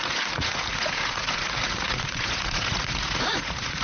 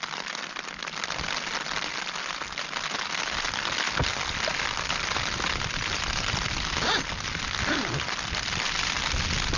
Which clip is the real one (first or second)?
second